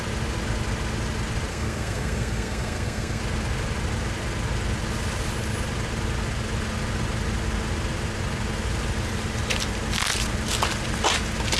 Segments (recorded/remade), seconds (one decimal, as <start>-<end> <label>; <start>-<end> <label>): 0.0-1.5 recorded; 1.5-3.2 remade; 3.2-11.6 recorded